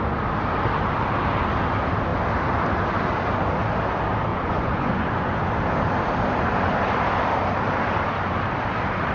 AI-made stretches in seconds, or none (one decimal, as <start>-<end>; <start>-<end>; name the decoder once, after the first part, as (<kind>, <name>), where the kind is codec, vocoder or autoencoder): 4.3-5.5 (vocoder, Vocos)